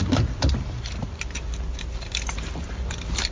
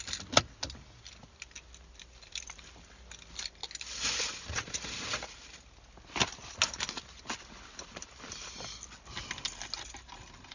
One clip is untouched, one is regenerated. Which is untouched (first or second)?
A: second